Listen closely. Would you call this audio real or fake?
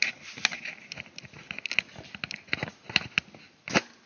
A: real